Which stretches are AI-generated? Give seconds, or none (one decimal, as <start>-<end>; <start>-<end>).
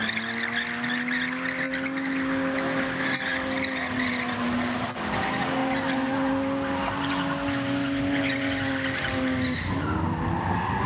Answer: none